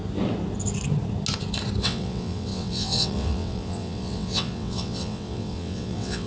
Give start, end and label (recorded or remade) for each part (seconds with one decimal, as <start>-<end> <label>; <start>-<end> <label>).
0.0-1.8 recorded; 1.8-6.3 remade